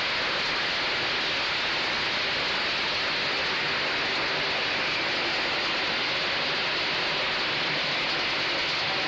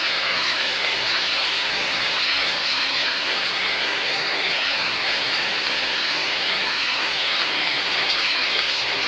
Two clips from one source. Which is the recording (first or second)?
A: first